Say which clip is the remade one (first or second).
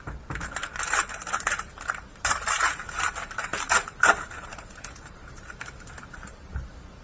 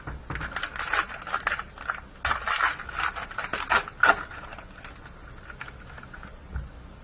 first